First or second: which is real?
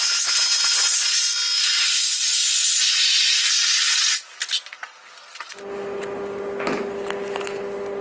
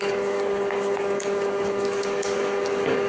first